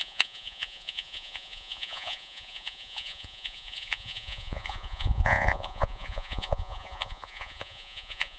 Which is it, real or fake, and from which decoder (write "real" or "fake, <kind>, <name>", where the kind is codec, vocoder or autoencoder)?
fake, vocoder, Vocos